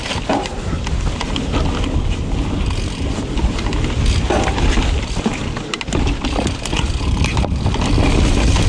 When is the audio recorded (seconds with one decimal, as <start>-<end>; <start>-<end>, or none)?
0.0-8.7